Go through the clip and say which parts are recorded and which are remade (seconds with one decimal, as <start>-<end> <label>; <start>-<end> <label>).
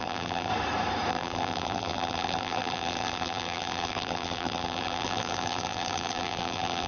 0.0-0.5 remade; 0.5-1.1 recorded; 1.1-6.9 remade